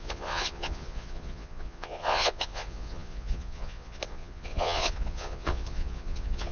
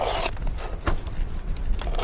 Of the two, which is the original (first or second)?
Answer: second